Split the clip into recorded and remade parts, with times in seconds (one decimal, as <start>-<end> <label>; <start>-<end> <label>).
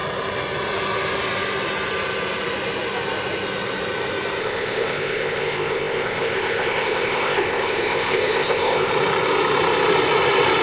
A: 0.0-4.4 recorded; 4.4-8.9 remade; 8.9-10.6 recorded